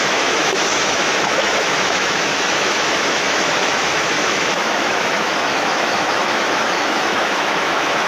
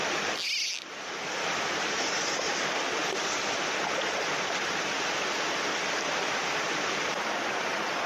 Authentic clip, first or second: second